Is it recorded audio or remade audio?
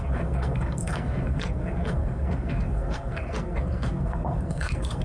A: remade